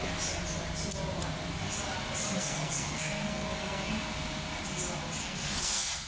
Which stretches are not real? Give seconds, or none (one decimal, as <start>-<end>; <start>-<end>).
2.2-3.9; 5.2-6.1